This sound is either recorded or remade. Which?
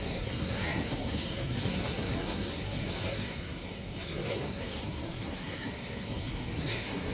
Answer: remade